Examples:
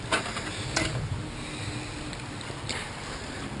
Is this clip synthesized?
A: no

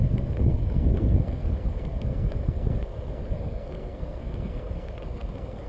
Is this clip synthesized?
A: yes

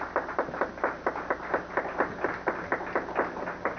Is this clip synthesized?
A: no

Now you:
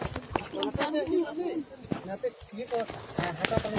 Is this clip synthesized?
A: no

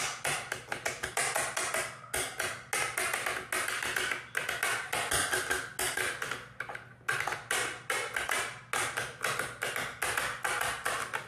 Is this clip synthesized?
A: no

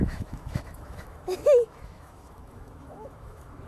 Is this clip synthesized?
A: yes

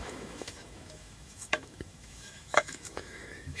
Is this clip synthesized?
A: yes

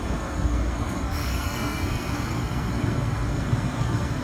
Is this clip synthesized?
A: yes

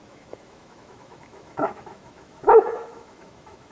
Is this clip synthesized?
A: yes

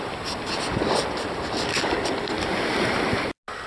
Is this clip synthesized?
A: no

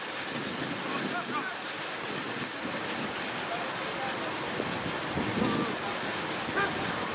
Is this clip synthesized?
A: no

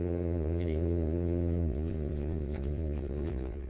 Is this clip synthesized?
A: yes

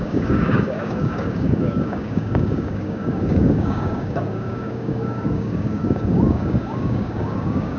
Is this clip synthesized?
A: yes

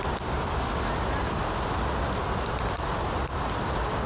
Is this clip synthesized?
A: no